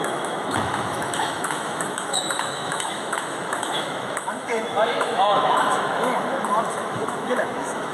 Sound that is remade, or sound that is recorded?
remade